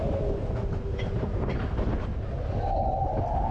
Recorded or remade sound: recorded